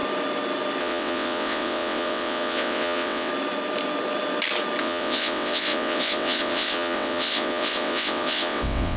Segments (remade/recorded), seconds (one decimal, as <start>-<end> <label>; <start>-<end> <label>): 0.0-0.8 recorded; 0.8-3.3 remade; 3.3-4.8 recorded; 4.8-9.0 remade